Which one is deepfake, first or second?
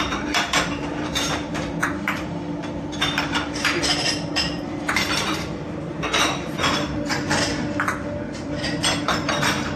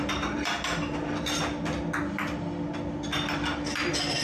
first